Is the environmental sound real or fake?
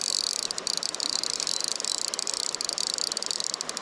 real